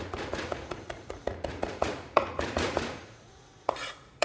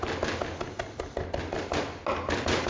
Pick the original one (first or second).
second